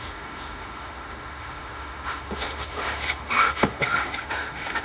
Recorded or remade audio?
remade